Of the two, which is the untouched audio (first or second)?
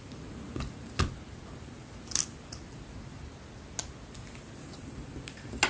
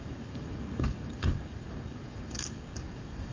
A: first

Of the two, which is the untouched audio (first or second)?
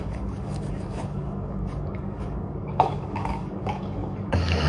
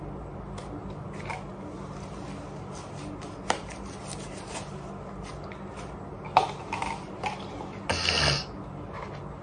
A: second